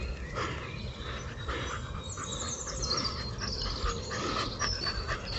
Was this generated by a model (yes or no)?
no